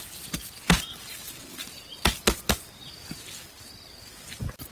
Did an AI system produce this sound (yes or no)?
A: no